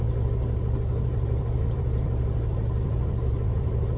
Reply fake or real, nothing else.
real